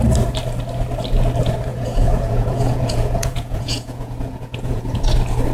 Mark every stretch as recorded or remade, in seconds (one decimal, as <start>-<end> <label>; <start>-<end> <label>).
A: 0.0-1.7 recorded; 1.7-5.0 remade; 5.0-5.5 recorded